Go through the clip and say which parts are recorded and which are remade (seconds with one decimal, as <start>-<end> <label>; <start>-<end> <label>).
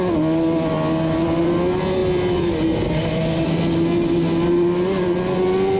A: 0.0-5.8 recorded